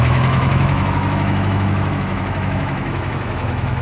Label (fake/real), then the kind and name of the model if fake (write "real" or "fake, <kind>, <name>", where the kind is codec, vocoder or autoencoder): fake, autoencoder, DAC-VAE